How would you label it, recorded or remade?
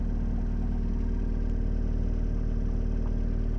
recorded